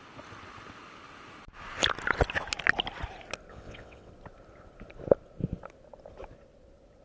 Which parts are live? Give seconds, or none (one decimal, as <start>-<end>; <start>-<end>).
0.0-3.5; 4.1-7.0